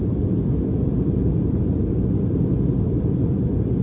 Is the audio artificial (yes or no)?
no